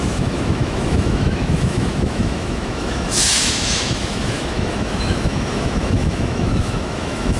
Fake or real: fake